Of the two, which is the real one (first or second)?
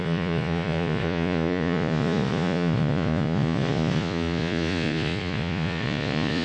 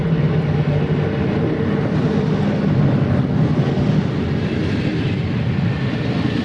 second